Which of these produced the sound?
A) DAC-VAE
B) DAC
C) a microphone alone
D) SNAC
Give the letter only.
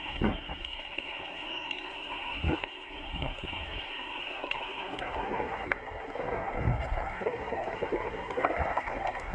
D